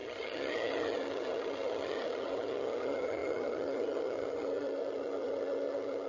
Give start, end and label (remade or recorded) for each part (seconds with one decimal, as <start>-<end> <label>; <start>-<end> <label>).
0.0-6.1 remade